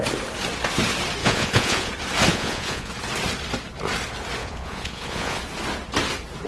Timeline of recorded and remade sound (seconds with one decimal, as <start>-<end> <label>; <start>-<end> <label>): 0.0-1.2 recorded; 1.2-1.9 remade; 1.9-2.3 recorded; 2.3-2.9 remade; 2.9-4.4 recorded; 4.4-5.4 remade; 5.4-6.5 recorded